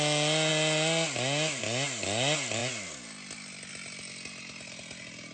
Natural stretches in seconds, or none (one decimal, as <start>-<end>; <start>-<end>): 0.0-5.3